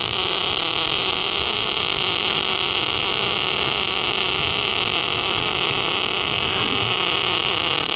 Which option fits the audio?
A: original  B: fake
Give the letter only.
A